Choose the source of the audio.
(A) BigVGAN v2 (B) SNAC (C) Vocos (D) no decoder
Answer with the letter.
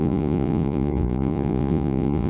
C